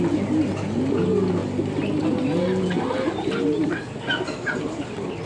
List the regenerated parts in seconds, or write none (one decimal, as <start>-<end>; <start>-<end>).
none